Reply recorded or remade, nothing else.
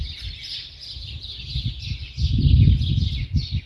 recorded